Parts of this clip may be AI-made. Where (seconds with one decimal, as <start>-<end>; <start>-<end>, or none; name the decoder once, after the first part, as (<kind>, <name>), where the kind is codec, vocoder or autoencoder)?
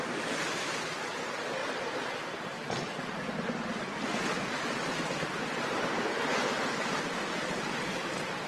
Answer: 1.6-3.8 (vocoder, BigVGAN v2)